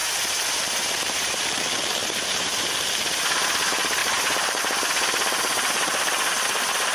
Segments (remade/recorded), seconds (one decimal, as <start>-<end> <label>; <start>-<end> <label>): 0.0-1.6 remade; 1.6-2.0 recorded; 2.0-2.7 remade; 2.7-4.0 recorded; 4.0-4.6 remade; 4.6-6.9 recorded